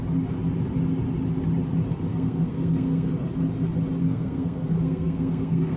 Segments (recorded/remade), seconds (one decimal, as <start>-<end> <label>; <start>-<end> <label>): 0.0-2.1 recorded; 2.1-3.1 remade; 3.1-4.0 recorded; 4.0-5.8 remade